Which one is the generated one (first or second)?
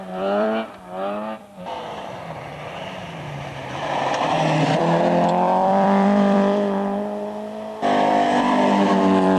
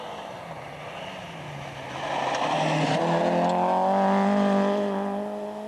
first